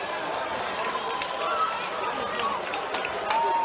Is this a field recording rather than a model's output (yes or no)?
yes